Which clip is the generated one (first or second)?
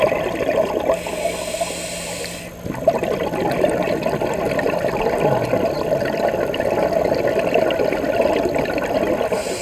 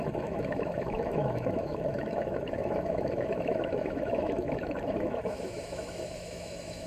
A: second